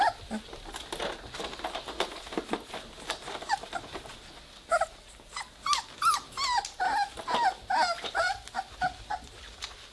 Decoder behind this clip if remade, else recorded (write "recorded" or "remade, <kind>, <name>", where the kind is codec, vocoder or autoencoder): recorded